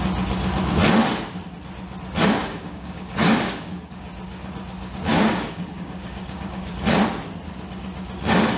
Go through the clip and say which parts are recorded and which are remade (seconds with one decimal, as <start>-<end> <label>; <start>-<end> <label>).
0.0-2.4 recorded; 2.4-4.1 remade; 4.1-5.1 recorded; 5.1-6.7 remade; 6.7-8.6 recorded

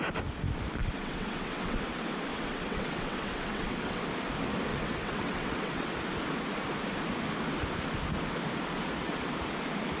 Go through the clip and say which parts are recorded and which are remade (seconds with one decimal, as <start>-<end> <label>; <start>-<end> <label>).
0.0-0.8 recorded; 0.8-1.8 remade; 1.8-2.3 recorded; 2.3-4.0 remade; 4.0-4.7 recorded; 4.7-5.9 remade; 5.9-10.0 recorded

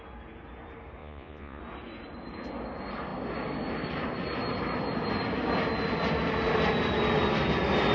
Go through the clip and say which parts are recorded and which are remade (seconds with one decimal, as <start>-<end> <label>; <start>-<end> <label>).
0.0-1.0 recorded; 1.0-1.6 remade; 1.6-7.9 recorded

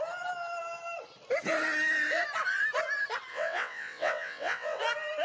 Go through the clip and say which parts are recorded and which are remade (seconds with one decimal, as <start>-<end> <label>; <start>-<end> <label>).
0.0-3.3 recorded; 3.3-4.8 remade; 4.8-5.2 recorded

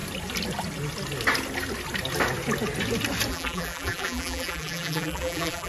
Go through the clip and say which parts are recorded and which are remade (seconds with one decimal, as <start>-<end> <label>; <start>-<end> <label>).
0.0-3.3 recorded; 3.3-5.7 remade

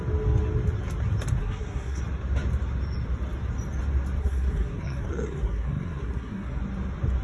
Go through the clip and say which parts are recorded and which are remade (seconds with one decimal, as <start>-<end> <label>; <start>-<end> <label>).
0.0-1.4 recorded; 1.4-2.0 remade; 2.0-4.2 recorded; 4.2-6.6 remade; 6.6-7.2 recorded

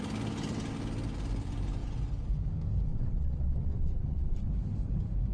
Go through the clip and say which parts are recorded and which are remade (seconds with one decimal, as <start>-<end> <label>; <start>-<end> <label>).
0.0-2.9 recorded; 2.9-4.5 remade; 4.5-5.3 recorded